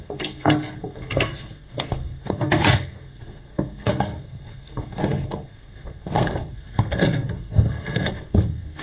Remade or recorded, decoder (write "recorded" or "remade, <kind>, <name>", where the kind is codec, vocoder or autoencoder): remade, codec, SNAC